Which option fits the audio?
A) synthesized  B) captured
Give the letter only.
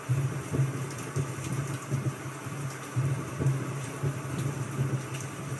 B